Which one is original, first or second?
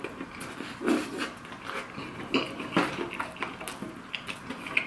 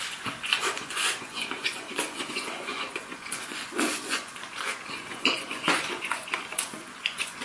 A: first